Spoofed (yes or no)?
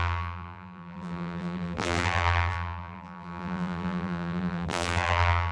yes